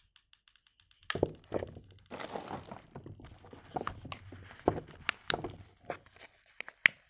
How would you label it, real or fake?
real